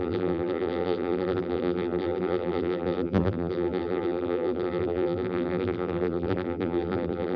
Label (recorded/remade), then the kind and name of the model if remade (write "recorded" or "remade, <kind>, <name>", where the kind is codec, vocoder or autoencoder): remade, vocoder, BigVGAN v2